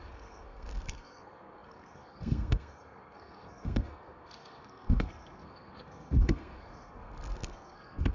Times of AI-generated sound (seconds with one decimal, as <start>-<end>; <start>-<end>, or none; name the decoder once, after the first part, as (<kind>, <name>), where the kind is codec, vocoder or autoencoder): 0.0-8.1 (codec, SNAC)